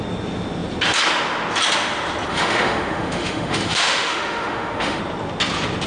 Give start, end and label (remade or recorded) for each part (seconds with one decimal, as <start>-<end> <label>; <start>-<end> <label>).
0.0-2.3 recorded; 2.3-5.0 remade; 5.0-5.9 recorded